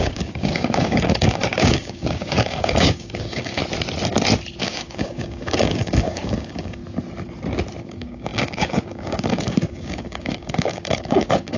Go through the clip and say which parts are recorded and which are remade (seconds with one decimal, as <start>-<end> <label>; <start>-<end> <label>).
0.0-3.6 remade; 3.6-4.6 recorded; 4.6-6.8 remade; 6.8-7.8 recorded; 7.8-11.6 remade